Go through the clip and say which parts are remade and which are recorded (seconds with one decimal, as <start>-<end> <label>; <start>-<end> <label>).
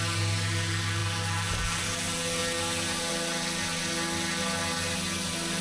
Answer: 0.0-5.6 recorded